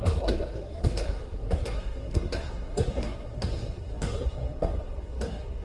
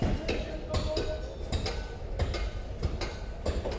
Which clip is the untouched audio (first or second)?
second